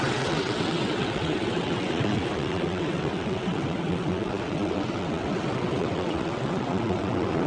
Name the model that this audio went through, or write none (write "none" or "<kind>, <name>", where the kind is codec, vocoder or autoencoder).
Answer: vocoder, WaveNeXt